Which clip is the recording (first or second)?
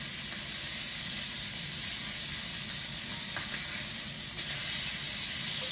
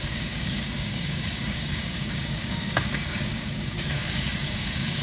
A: first